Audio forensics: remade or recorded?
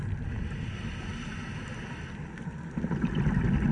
recorded